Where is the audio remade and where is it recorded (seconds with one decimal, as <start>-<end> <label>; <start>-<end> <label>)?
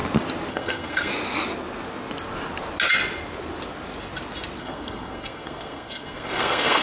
0.0-0.5 recorded; 0.5-1.1 remade; 1.1-4.6 recorded; 4.6-6.8 remade